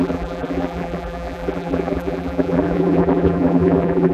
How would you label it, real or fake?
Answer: fake